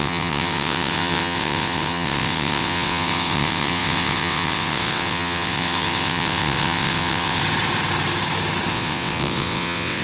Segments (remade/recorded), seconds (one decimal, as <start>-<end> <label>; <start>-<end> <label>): 0.0-7.4 remade; 7.4-8.7 recorded; 8.7-10.0 remade